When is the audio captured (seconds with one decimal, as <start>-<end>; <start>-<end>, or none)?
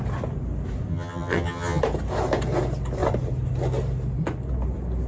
0.0-0.9; 1.8-5.1